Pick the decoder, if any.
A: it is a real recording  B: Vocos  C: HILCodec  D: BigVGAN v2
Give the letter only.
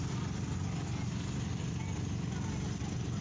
A